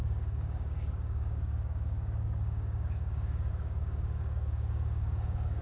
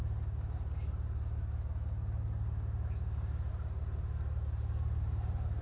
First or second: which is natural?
second